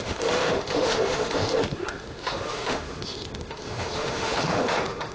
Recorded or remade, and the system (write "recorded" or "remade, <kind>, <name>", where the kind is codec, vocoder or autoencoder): remade, autoencoder, DAC-VAE